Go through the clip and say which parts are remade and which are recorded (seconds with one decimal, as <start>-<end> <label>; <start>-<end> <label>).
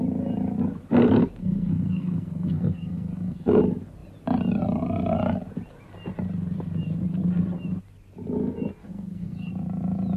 0.0-1.4 recorded; 1.4-3.6 remade; 3.6-8.8 recorded; 8.8-9.5 remade; 9.5-10.2 recorded